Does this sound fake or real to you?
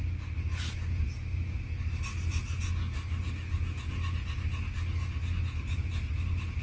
real